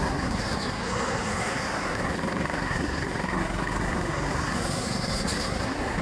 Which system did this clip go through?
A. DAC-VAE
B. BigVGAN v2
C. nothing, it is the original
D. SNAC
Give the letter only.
D